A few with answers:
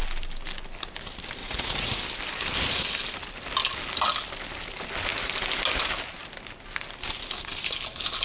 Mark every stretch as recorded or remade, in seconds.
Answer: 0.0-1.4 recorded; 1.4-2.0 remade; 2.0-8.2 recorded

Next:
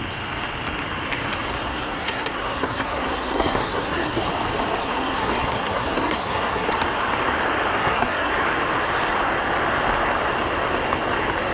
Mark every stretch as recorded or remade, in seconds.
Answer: 0.0-1.7 recorded; 1.7-4.3 remade; 4.3-4.8 recorded; 4.8-6.7 remade; 6.7-7.8 recorded; 7.8-8.3 remade; 8.3-11.5 recorded

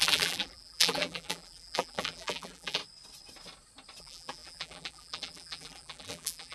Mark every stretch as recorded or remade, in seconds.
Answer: 0.0-2.8 remade; 2.8-4.0 recorded; 4.0-6.5 remade